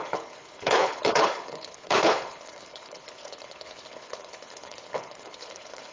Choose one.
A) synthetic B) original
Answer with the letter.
A